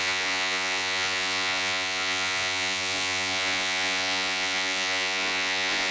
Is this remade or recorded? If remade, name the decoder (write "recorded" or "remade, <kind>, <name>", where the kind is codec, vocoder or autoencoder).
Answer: remade, vocoder, Vocos